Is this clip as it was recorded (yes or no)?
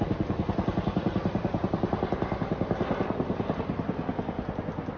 yes